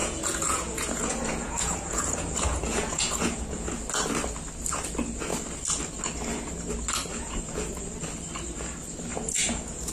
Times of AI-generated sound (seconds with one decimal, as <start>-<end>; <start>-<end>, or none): 0.0-3.8; 7.1-7.7; 9.1-9.9